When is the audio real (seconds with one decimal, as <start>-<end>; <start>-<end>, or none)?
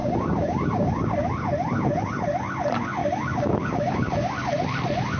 1.3-3.0; 4.3-5.2